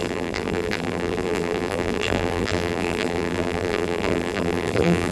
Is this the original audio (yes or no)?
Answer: no